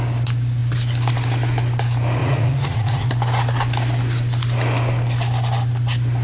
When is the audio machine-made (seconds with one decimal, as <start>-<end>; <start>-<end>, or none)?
2.2-3.1